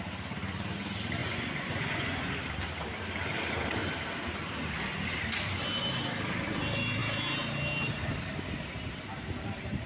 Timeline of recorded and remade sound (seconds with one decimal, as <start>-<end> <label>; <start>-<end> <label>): 0.0-1.2 recorded; 1.2-2.3 remade; 2.3-9.9 recorded